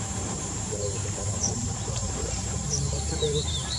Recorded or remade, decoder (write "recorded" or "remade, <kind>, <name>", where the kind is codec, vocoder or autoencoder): remade, vocoder, BigVGAN v2